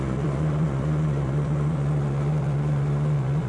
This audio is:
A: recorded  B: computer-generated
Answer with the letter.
B